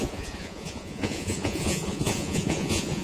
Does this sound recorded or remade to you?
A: remade